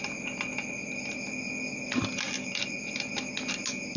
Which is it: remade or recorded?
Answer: recorded